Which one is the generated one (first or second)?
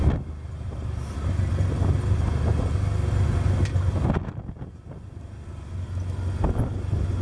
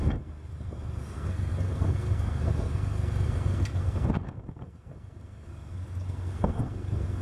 second